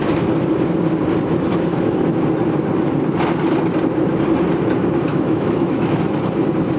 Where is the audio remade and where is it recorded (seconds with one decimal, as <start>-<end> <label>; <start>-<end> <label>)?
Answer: 0.0-5.1 recorded; 5.1-6.2 remade; 6.2-6.8 recorded